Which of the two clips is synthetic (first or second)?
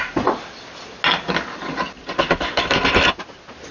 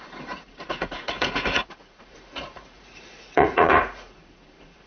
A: second